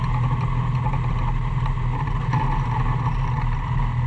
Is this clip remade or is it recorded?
recorded